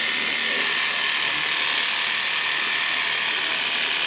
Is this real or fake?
real